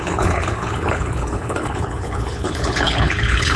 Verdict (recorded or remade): remade